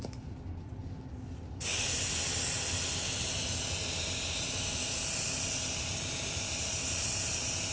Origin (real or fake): real